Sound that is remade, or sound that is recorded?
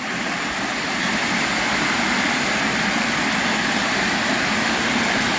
recorded